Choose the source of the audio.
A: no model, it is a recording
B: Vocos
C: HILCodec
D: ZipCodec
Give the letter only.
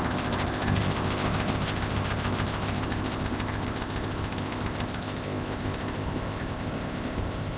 D